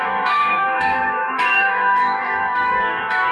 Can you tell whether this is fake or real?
fake